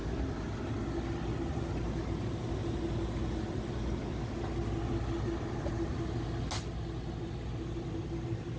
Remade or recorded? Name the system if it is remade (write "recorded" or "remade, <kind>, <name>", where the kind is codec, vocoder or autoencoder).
recorded